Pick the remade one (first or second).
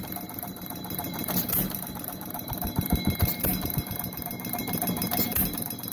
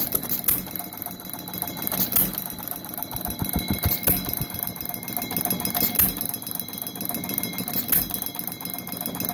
first